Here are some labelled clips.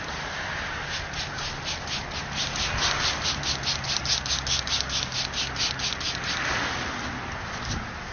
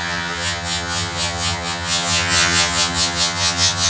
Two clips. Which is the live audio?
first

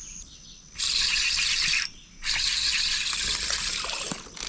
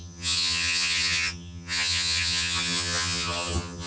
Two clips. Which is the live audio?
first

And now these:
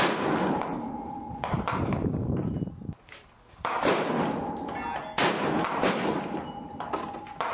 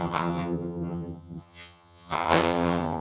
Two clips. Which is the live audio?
first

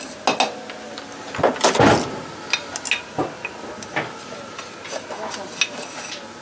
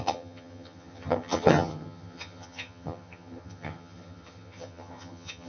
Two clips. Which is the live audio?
first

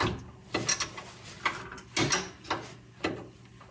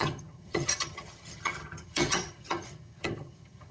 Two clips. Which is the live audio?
first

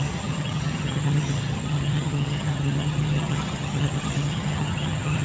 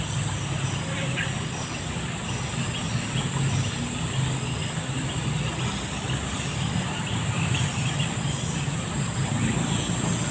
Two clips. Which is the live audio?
second